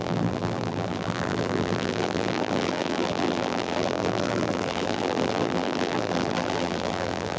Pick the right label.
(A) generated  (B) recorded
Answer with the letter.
A